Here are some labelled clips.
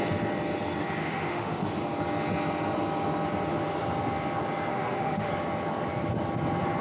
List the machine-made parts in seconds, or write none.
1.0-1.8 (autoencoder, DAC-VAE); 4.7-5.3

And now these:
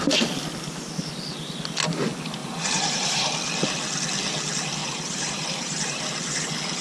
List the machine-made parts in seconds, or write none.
2.4-3.3 (vocoder, BigVGAN v2); 4.8-6.0

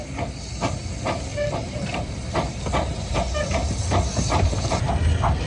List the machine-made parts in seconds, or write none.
1.3-2.6 (vocoder, BigVGAN v2)

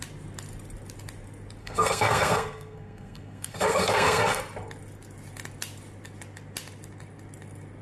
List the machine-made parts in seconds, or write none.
1.6-4.4 (codec, SNAC)

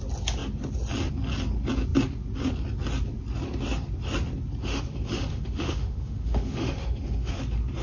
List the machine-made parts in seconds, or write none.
4.6-7.3 (autoencoder, DAC-VAE)

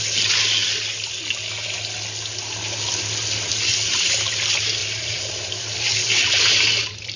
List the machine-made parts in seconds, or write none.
4.8-7.2 (vocoder, BigVGAN v2)

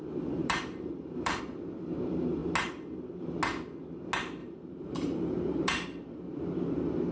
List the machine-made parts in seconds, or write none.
0.4-1.4 (vocoder, BigVGAN v2); 4.4-6.4